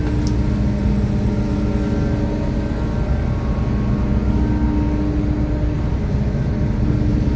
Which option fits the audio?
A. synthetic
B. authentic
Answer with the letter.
B